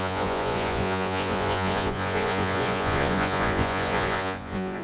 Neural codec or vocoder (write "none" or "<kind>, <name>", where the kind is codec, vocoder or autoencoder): vocoder, Vocos